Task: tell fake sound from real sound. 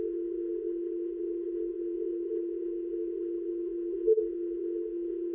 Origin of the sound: fake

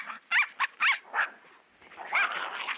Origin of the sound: real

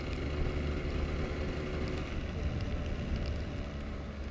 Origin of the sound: real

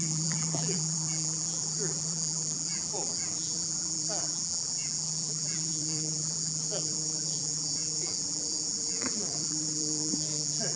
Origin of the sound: fake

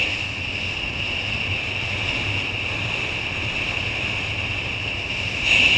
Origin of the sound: real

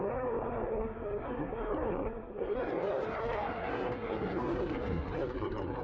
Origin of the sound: fake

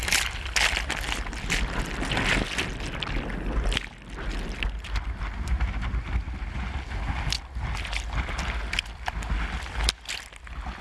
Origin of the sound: real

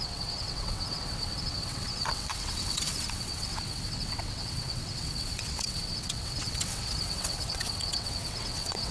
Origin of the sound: fake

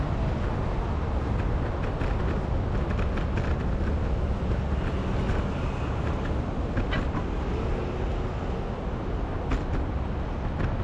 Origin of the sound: real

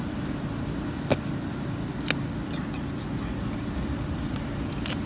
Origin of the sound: real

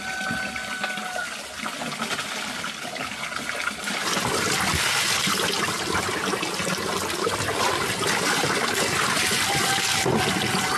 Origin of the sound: real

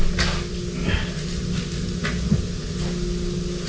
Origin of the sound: real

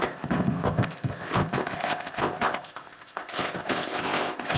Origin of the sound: fake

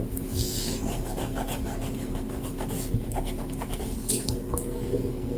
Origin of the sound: fake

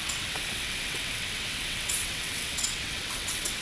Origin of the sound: fake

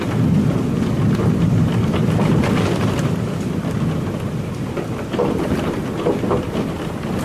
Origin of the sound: fake